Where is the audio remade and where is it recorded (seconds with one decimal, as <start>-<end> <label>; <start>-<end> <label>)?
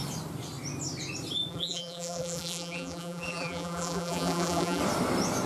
0.0-1.5 recorded; 1.5-4.8 remade; 4.8-5.5 recorded